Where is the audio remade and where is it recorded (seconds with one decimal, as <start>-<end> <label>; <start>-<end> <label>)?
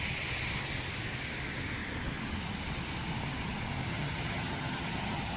0.0-3.9 recorded; 3.9-5.4 remade